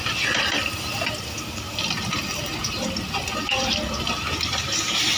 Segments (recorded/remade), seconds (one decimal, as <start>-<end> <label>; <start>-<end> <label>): 0.0-5.2 recorded